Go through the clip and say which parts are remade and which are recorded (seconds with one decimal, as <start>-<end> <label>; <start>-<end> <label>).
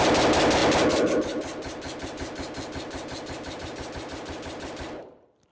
0.0-5.5 recorded